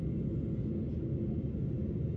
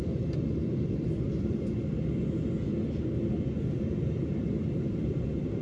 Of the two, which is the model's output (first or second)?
second